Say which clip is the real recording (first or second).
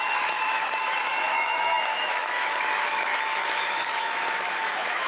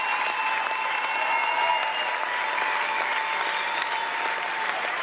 second